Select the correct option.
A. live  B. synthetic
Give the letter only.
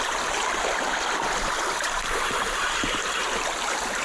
A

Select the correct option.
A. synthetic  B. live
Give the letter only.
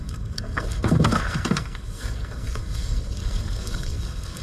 A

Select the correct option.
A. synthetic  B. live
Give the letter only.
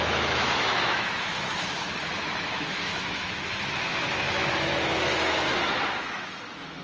A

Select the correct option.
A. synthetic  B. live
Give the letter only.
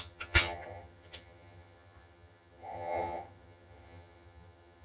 A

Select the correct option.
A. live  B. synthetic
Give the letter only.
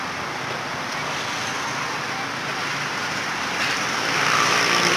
B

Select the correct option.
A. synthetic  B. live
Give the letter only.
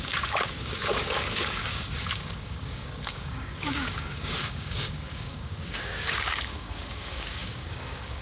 A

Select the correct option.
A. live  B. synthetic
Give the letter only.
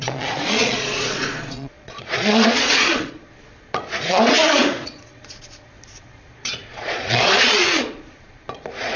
B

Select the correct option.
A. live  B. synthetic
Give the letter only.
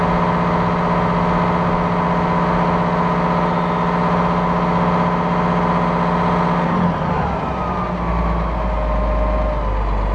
A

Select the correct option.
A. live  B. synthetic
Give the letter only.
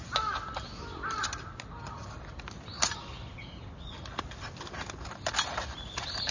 A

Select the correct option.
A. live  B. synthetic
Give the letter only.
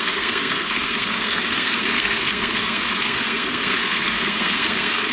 B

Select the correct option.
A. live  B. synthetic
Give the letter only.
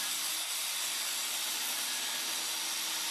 A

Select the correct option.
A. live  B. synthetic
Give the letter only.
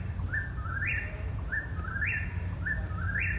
A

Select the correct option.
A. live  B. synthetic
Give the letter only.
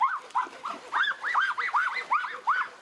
A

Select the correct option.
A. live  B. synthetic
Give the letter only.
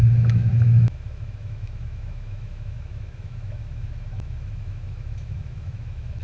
B